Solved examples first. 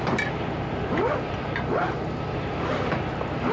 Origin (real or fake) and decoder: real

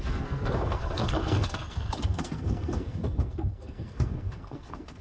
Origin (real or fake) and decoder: fake, codec, SNAC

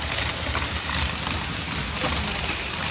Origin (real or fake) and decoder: real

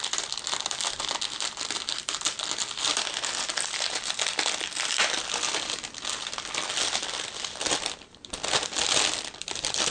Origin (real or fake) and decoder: real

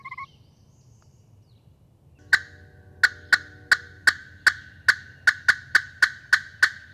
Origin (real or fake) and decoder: real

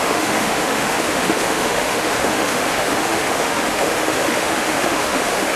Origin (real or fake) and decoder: fake, autoencoder, DAC-VAE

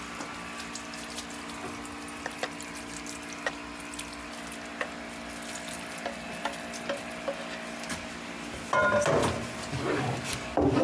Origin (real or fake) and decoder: real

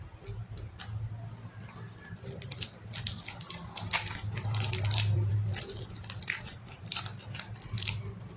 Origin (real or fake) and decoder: real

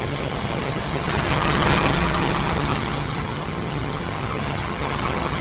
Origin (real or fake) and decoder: fake, vocoder, HiFi-GAN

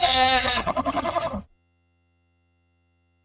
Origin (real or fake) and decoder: fake, vocoder, HiFi-GAN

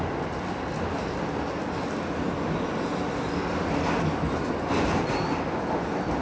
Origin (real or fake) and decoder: real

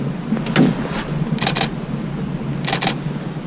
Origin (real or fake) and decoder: real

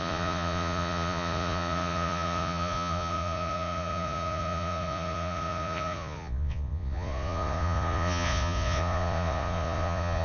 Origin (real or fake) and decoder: fake, vocoder, Vocos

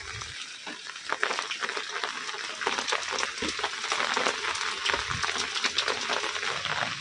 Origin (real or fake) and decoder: real